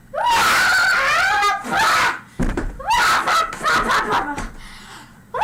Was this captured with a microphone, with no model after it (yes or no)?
yes